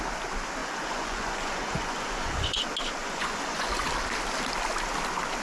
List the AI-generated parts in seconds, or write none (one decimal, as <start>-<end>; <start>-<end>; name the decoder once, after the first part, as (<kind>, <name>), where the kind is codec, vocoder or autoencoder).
0.6-2.6 (vocoder, Vocos); 3.0-3.9